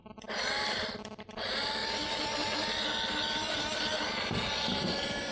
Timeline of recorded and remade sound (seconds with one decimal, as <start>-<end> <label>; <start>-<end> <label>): 0.0-1.8 remade; 1.8-5.3 recorded

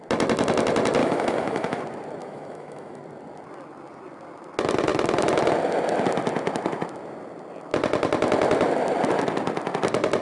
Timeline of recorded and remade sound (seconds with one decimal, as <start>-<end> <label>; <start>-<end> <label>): 0.0-1.0 recorded; 1.0-1.8 remade; 1.8-2.2 recorded; 2.2-3.0 remade; 3.0-10.2 recorded